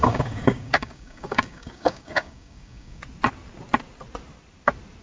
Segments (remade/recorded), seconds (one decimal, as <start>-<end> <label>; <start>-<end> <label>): 0.0-3.0 remade; 3.0-5.0 recorded